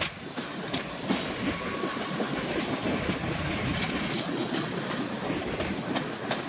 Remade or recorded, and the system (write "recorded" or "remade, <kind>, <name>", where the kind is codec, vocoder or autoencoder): recorded